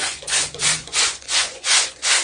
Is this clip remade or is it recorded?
remade